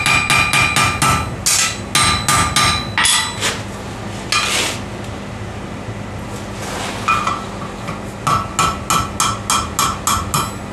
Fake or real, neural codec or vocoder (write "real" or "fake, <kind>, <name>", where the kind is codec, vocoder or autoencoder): real